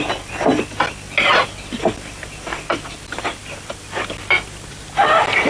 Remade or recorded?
recorded